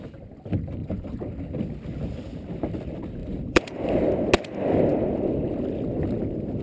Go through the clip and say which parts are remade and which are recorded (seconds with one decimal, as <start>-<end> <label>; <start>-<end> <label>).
0.0-0.8 recorded; 0.8-1.6 remade; 1.6-3.2 recorded; 3.2-4.3 remade; 4.3-6.6 recorded